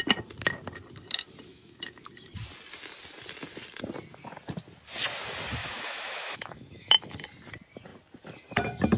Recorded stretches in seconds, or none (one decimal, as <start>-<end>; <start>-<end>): 0.0-1.5; 2.1-5.6; 7.1-9.0